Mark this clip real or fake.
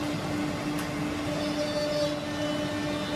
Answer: real